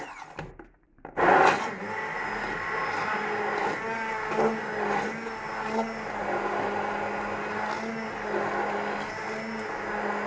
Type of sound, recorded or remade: recorded